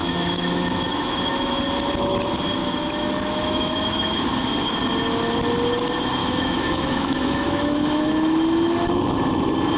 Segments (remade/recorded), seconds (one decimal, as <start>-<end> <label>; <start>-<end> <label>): 0.0-1.6 remade; 1.6-2.6 recorded; 2.6-4.3 remade; 4.3-6.2 recorded; 6.2-8.1 remade; 8.1-9.8 recorded